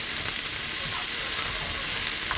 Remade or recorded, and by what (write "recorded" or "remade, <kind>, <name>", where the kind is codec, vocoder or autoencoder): recorded